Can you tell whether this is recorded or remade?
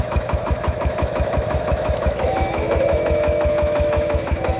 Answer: remade